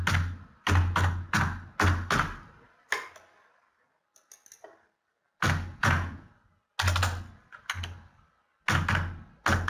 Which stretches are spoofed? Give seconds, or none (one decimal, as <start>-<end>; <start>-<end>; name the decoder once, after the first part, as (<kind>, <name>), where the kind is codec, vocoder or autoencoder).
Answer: 5.7-6.3 (vocoder, Vocos)